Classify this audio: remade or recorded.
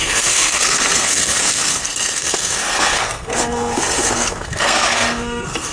remade